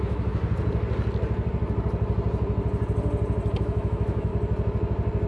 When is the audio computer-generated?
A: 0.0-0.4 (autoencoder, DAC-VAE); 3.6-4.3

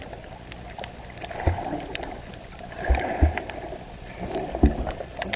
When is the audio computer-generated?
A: 0.9-4.1 (vocoder, BigVGAN v2)